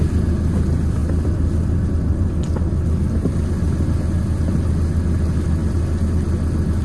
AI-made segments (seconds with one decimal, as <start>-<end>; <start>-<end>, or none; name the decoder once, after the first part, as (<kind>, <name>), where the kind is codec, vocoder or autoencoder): 1.0-3.5 (vocoder, BigVGAN v2); 5.6-6.1